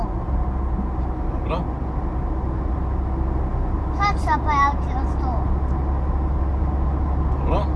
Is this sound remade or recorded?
recorded